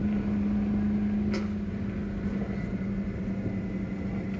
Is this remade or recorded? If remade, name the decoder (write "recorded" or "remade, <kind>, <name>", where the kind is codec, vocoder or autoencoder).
recorded